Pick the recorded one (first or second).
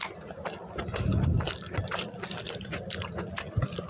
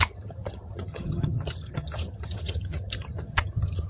first